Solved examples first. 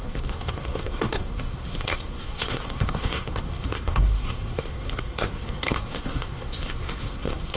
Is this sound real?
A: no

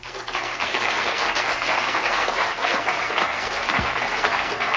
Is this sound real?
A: no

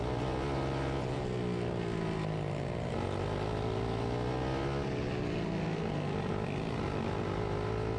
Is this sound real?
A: yes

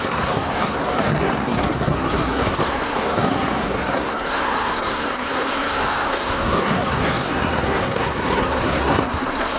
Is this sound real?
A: no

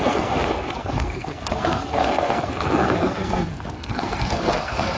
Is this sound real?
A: no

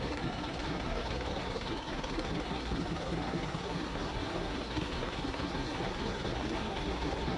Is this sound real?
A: no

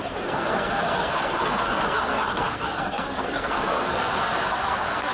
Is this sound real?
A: no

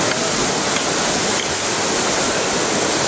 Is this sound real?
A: yes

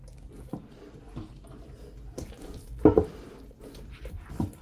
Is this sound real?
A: yes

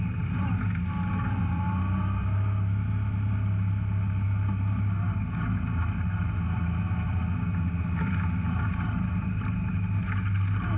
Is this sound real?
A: yes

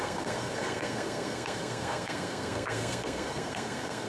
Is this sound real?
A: no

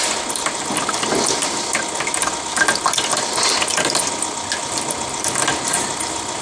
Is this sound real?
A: yes